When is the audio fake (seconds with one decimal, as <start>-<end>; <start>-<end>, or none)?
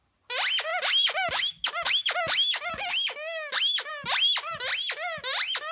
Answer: 0.7-3.9